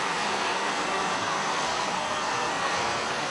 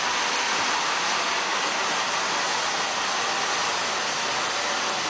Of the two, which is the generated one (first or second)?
first